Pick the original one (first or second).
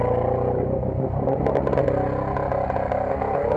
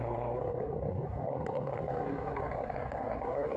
first